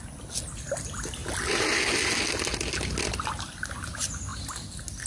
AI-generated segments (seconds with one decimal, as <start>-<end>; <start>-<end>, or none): none